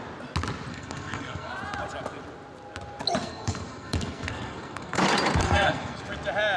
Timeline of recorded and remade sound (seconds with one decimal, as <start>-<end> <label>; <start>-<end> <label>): 0.0-0.7 recorded; 0.7-1.5 remade; 1.5-3.2 recorded; 3.2-5.0 remade; 5.0-5.4 recorded; 5.4-6.0 remade; 6.0-6.6 recorded